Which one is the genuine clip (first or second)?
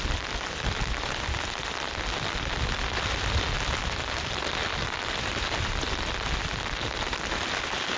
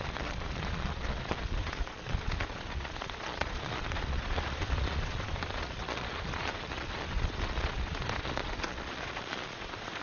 first